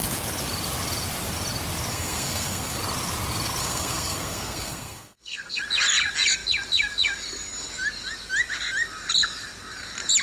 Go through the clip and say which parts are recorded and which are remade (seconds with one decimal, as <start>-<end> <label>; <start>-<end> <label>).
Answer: 0.0-1.9 recorded; 1.9-2.8 remade; 2.8-3.6 recorded; 3.6-5.6 remade; 5.6-10.2 recorded